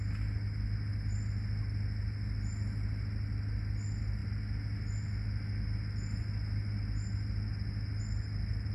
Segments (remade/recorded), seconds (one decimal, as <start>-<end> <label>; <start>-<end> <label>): 0.0-8.7 recorded